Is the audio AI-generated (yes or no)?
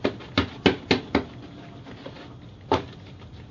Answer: no